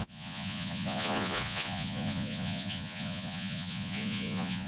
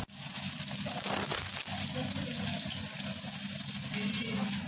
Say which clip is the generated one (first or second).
first